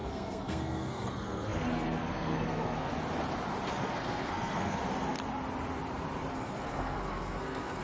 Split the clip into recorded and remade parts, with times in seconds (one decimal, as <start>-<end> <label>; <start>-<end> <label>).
0.0-2.9 remade; 2.9-3.7 recorded; 3.7-4.8 remade; 4.8-6.3 recorded; 6.3-7.8 remade